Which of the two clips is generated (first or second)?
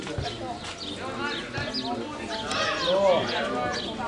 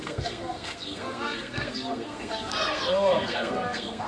second